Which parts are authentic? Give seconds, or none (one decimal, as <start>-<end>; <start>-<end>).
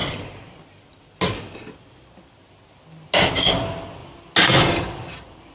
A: 0.0-5.5